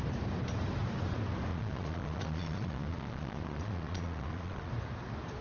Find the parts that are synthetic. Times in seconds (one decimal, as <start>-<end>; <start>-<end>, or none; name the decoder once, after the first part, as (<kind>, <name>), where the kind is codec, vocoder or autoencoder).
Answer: 1.5-4.7 (vocoder, Vocos)